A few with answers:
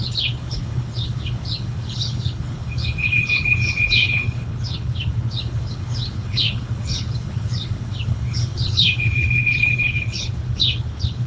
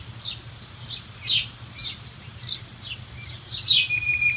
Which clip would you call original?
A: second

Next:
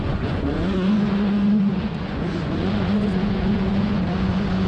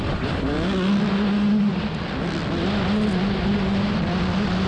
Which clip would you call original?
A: second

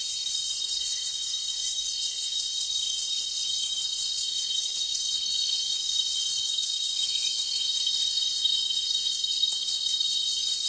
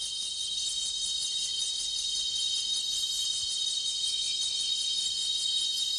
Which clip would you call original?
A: second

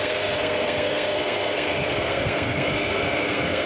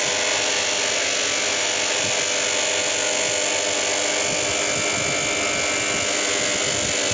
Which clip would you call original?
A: second